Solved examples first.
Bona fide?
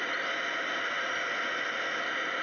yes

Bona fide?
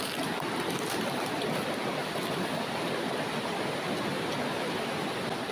yes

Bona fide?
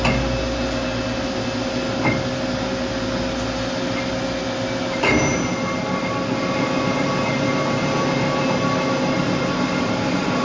yes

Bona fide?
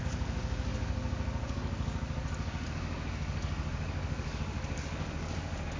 no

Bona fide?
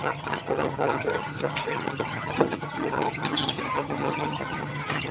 no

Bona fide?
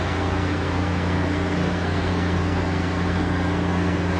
no